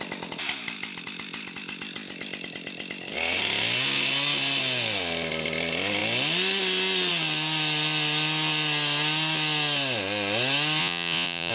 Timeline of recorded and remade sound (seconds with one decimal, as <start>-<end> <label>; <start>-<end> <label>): 0.0-10.8 recorded; 10.8-11.5 remade